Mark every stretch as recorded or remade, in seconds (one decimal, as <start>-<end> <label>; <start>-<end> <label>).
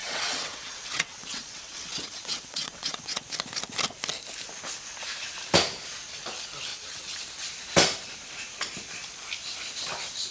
0.0-3.2 remade; 3.2-6.7 recorded; 6.7-7.2 remade; 7.2-10.3 recorded